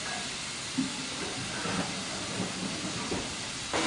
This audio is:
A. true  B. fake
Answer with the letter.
A